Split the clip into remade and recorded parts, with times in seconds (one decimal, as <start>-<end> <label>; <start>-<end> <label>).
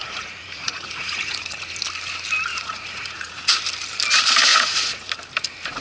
0.0-1.7 remade; 1.7-2.5 recorded; 2.5-3.6 remade; 3.6-4.5 recorded; 4.5-5.1 remade; 5.1-5.8 recorded